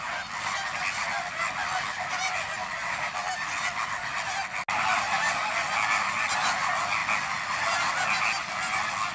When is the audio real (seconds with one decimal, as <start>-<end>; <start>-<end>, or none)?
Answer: 0.0-9.1